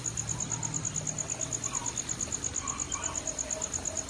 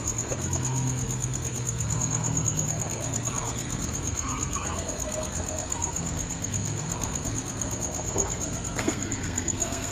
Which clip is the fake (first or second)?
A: second